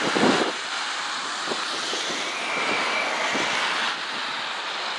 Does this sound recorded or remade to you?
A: recorded